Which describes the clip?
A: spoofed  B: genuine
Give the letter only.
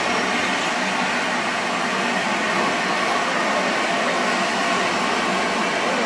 B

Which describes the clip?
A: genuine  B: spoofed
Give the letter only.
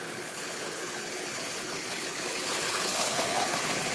B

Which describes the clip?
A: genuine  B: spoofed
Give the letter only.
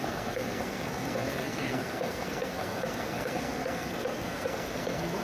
B